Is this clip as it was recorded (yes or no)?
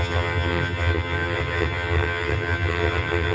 no